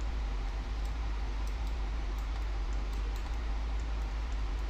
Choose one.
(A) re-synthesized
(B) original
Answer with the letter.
A